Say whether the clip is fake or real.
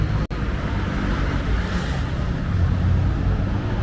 real